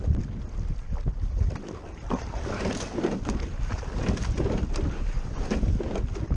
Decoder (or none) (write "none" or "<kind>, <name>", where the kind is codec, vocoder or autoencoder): none